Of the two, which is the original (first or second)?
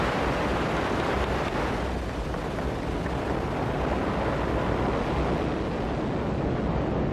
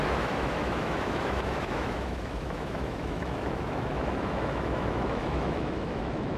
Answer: first